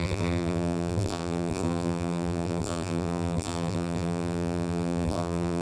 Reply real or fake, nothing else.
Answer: fake